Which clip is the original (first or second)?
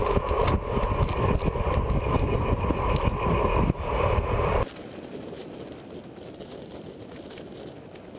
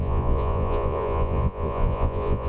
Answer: first